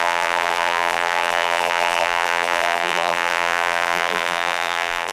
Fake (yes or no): yes